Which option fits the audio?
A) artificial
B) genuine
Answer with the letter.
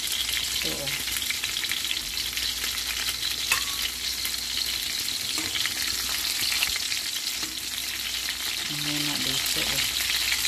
B